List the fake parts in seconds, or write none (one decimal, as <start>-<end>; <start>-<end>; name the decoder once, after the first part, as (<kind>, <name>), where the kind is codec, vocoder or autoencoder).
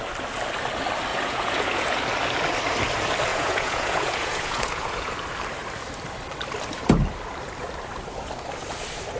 1.1-2.0 (vocoder, Vocos); 3.3-5.1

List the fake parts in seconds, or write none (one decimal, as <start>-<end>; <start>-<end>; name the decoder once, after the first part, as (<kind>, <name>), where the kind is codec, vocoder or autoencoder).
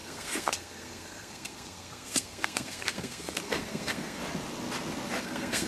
0.0-4.2 (codec, SNAC); 5.2-5.7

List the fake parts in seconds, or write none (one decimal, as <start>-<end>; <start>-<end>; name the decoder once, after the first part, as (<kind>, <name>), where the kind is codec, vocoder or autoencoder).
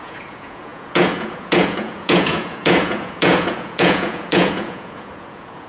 0.0-5.7 (vocoder, Vocos)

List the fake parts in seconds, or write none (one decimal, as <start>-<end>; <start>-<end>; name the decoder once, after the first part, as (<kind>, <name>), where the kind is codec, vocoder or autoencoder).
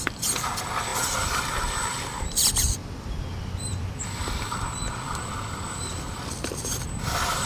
0.0-7.5 (vocoder, BigVGAN v2)